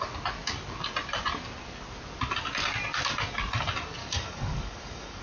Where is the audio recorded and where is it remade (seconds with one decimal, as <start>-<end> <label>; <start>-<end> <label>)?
0.0-4.0 recorded; 4.0-5.2 remade